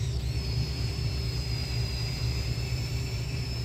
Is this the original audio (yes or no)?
no